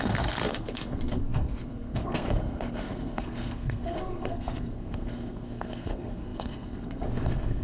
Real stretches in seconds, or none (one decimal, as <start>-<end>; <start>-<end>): none